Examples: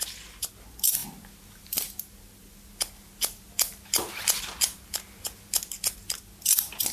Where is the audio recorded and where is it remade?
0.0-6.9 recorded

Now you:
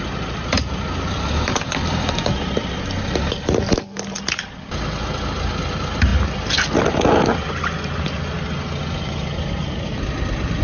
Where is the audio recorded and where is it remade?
0.0-10.6 recorded

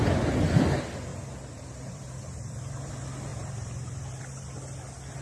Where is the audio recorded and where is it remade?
0.0-1.1 recorded; 1.1-2.9 remade; 2.9-3.3 recorded; 3.3-4.2 remade; 4.2-5.2 recorded

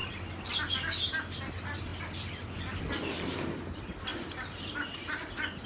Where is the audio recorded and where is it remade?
0.0-5.7 recorded

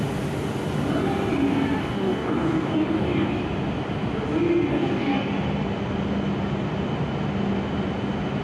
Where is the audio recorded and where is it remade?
0.0-1.8 recorded; 1.8-3.4 remade; 3.4-4.7 recorded; 4.7-5.3 remade; 5.3-8.4 recorded

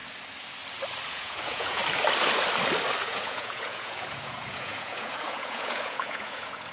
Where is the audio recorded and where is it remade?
0.0-1.1 recorded; 1.1-1.8 remade; 1.8-3.0 recorded; 3.0-6.7 remade

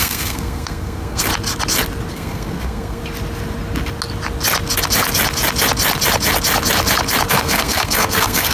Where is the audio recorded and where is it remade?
0.0-1.3 remade; 1.3-2.1 recorded; 2.1-3.0 remade; 3.0-7.3 recorded; 7.3-8.5 remade

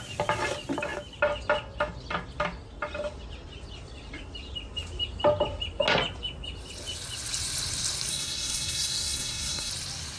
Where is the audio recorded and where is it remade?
0.0-8.1 recorded; 8.1-9.7 remade; 9.7-10.2 recorded